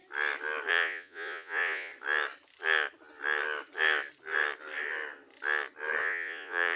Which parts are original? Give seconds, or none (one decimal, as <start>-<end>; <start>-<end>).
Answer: 0.0-0.7; 1.9-6.0